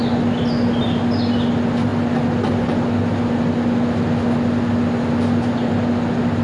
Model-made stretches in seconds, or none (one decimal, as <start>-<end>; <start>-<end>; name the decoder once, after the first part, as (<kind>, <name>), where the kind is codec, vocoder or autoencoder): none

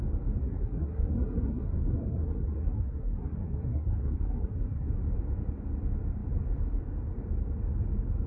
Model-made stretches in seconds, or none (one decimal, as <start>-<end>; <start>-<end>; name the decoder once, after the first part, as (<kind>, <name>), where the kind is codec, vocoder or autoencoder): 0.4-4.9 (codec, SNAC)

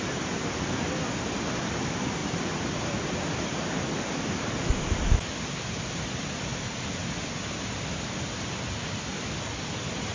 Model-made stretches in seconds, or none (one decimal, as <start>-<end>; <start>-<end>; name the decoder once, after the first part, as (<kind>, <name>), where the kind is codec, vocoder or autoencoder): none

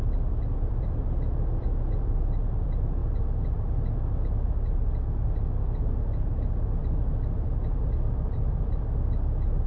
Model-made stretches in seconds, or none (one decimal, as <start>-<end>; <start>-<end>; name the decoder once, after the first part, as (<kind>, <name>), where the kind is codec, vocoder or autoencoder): 0.0-3.0 (vocoder, BigVGAN v2); 5.9-9.7

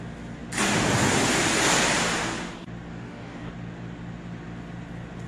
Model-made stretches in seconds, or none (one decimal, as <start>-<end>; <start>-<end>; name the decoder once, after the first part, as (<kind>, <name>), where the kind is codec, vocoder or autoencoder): 2.9-3.5 (codec, DAC)